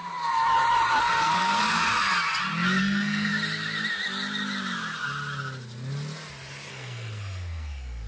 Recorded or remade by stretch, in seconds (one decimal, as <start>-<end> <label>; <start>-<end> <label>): 0.0-1.0 recorded; 1.0-2.1 remade; 2.1-2.8 recorded; 2.8-3.3 remade; 3.3-6.7 recorded; 6.7-8.1 remade